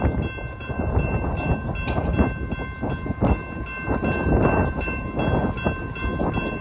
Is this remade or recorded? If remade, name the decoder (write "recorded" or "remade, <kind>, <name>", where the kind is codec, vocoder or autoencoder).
recorded